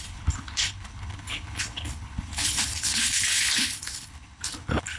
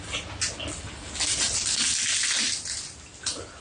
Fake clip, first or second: first